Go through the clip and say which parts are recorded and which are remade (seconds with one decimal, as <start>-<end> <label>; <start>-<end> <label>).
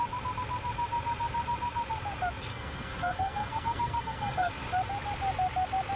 0.0-2.5 recorded; 2.5-4.5 remade; 4.5-6.0 recorded